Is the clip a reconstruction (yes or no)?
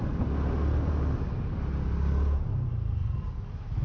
no